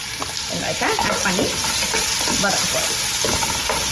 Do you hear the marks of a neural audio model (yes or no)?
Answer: no